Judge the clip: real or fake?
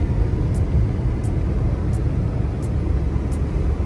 real